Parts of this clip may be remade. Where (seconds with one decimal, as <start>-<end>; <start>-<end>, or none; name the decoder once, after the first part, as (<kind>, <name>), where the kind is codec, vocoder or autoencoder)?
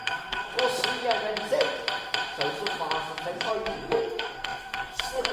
0.0-0.5 (codec, SNAC); 3.5-5.3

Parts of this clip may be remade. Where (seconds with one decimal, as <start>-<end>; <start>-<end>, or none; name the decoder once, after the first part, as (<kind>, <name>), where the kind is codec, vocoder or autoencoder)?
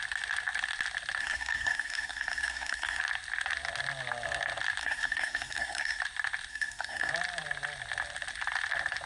1.2-3.0 (codec, SNAC); 4.8-6.0; 6.5-7.1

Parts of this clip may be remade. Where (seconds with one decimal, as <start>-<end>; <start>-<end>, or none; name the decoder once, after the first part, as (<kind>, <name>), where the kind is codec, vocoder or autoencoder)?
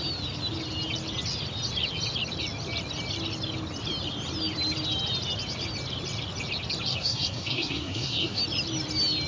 6.9-8.4 (codec, SNAC)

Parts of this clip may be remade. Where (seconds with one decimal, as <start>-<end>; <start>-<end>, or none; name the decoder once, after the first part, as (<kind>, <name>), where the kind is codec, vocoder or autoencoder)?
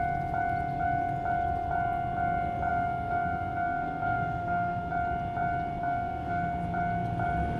2.7-4.9 (codec, SNAC); 5.8-6.4